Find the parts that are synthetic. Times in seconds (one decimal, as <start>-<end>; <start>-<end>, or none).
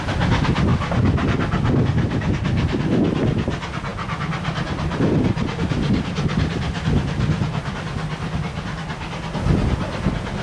none